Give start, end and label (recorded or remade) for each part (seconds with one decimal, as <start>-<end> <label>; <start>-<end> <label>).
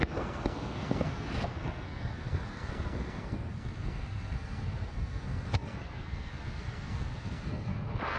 0.0-8.2 remade